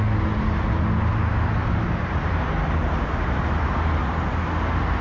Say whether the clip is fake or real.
real